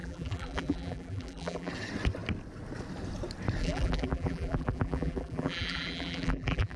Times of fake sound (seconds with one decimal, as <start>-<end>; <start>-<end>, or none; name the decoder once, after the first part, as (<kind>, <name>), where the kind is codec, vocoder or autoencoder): 0.0-1.7 (vocoder, BigVGAN v2); 3.6-6.8